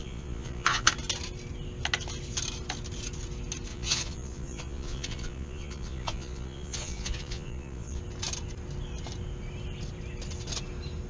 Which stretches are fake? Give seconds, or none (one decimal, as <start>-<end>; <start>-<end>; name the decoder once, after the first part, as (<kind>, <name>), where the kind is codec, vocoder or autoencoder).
0.0-0.9 (vocoder, Vocos); 3.7-8.0